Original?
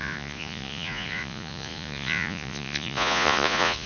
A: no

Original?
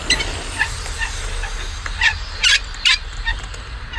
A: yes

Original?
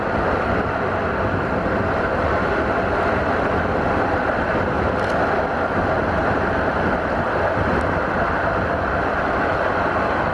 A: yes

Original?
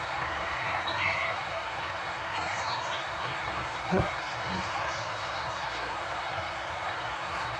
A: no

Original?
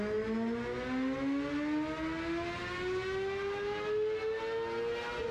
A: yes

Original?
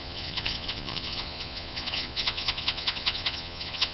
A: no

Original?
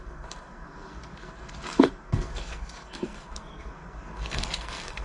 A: no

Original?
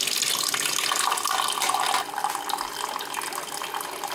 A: yes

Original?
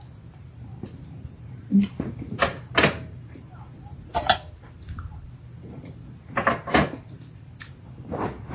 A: no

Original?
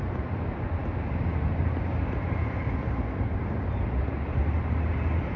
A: yes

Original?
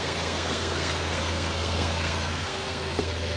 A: no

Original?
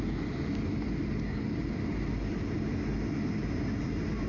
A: yes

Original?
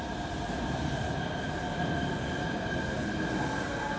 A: yes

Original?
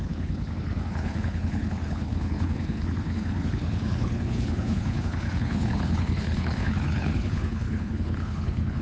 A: no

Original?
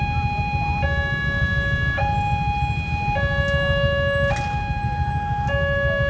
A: yes